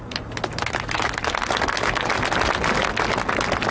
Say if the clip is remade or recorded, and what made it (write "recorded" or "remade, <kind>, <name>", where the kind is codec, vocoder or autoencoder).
recorded